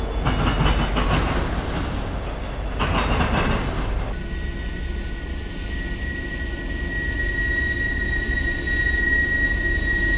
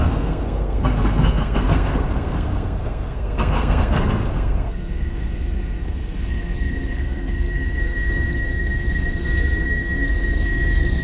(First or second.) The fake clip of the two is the second